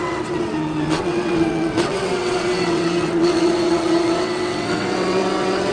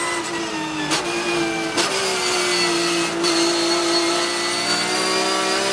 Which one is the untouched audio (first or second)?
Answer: second